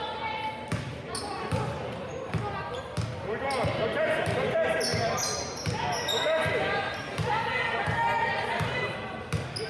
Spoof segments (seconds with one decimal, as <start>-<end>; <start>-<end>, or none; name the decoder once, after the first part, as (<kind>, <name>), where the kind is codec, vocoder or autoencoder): none